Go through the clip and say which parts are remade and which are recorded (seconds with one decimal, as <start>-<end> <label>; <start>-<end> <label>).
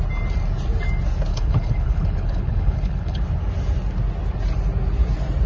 0.0-1.3 recorded; 1.3-3.2 remade; 3.2-5.5 recorded